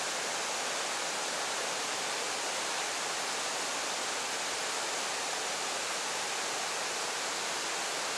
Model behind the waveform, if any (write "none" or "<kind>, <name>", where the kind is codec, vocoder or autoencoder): none